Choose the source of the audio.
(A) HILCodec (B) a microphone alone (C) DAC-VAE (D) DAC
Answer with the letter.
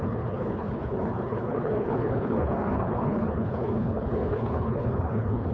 A